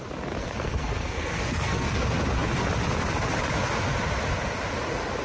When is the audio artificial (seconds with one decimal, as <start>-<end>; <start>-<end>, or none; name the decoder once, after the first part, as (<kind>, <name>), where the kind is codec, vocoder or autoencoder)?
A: 0.4-2.0 (codec, SNAC)